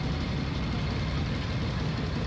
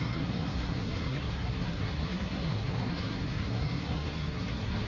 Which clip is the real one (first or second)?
first